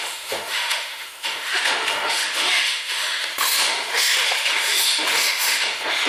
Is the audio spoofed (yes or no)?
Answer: yes